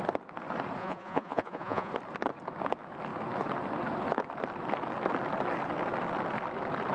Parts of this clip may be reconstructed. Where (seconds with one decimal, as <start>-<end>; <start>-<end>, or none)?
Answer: 0.8-1.9